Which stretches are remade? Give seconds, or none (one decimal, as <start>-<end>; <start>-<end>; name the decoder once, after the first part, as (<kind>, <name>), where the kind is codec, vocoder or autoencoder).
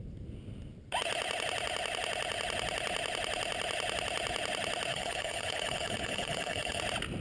4.9-6.8 (codec, HILCodec)